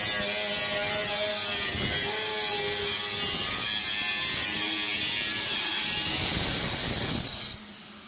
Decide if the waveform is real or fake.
real